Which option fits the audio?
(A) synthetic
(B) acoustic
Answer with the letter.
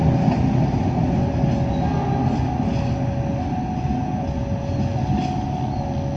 B